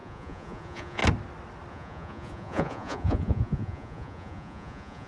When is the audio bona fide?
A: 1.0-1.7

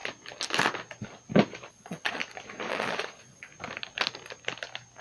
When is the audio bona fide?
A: 0.0-1.7; 2.2-2.7; 3.5-5.0

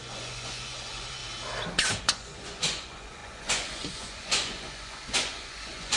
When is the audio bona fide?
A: 1.2-2.0

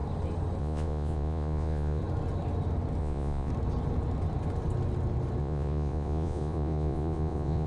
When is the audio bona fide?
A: 0.0-0.6; 2.0-3.0; 3.5-5.4